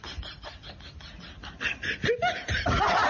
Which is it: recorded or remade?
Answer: recorded